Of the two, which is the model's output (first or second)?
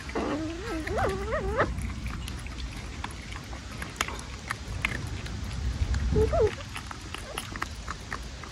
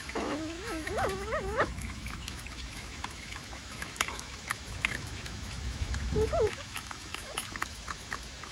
second